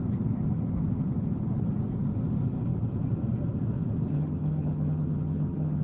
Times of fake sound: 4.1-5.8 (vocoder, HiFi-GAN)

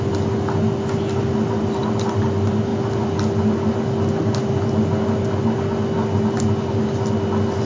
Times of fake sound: none

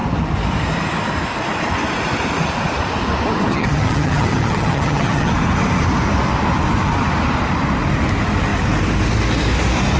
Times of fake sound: 3.5-5.3 (vocoder, HiFi-GAN)